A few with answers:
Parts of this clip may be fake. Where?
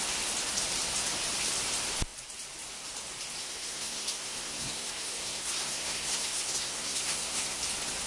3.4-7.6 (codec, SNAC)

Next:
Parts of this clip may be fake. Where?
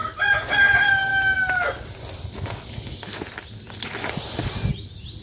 none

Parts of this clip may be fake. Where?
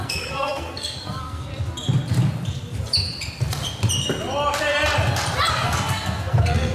0.0-1.5 (codec, SNAC); 5.5-6.7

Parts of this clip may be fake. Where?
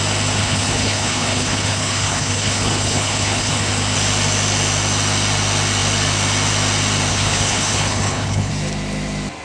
0.4-3.7 (codec, HILCodec); 7.1-8.5